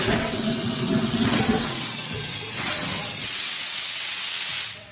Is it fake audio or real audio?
fake